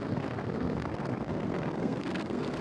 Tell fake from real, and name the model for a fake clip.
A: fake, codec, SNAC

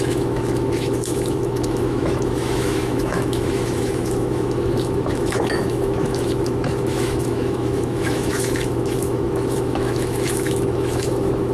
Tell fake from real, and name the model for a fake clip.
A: fake, autoencoder, DAC-VAE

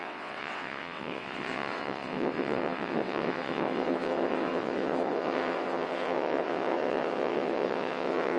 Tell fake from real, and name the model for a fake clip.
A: fake, vocoder, WaveNeXt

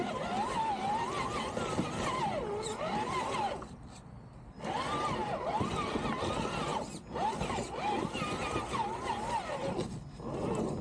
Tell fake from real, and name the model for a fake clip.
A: real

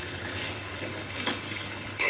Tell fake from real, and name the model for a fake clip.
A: fake, codec, HILCodec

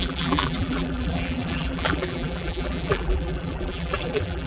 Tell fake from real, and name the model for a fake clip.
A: fake, vocoder, BigVGAN v2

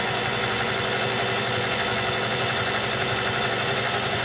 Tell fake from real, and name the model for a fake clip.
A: fake, vocoder, Vocos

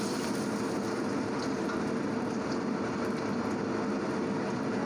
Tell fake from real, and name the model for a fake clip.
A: real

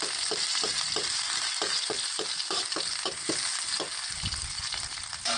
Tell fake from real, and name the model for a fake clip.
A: real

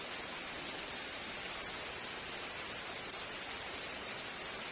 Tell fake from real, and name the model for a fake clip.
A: real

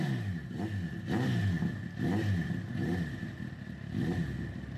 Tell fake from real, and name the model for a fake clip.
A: real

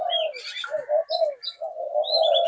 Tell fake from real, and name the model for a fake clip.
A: real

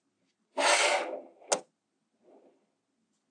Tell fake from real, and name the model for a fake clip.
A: real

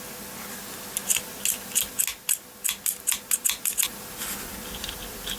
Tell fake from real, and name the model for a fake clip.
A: real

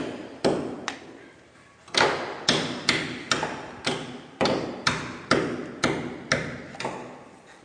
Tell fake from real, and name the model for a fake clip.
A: real